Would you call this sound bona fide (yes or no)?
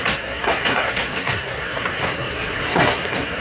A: no